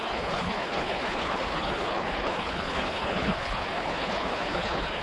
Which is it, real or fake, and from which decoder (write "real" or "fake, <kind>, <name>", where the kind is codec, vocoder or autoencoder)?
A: fake, codec, HILCodec